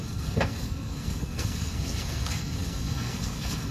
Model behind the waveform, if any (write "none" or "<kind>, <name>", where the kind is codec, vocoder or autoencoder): codec, SNAC